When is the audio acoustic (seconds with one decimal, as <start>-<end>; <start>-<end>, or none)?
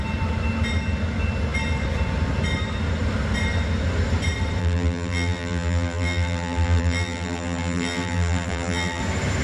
0.0-4.6; 9.0-9.4